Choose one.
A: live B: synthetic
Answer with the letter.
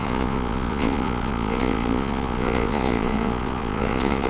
B